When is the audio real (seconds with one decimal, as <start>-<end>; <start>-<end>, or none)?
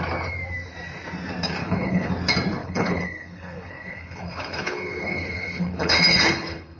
0.0-1.6; 2.1-2.6